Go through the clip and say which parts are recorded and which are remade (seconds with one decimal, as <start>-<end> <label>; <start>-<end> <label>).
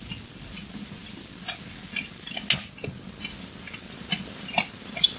0.0-5.2 recorded